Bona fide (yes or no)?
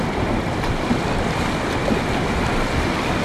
yes